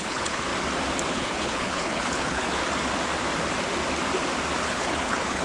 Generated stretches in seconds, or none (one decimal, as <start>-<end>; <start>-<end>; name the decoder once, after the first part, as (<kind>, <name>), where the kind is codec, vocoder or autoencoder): 0.0-0.5 (codec, HILCodec); 1.1-2.6; 4.6-5.4